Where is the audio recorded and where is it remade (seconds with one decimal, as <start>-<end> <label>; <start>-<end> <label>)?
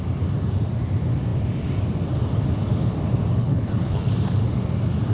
0.0-3.4 recorded; 3.4-4.1 remade; 4.1-5.1 recorded